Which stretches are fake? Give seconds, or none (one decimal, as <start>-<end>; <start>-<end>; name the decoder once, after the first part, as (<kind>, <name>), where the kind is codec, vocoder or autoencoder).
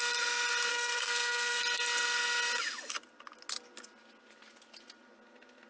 0.7-1.6 (codec, SNAC)